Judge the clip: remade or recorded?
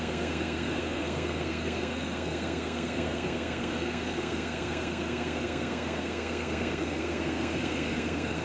remade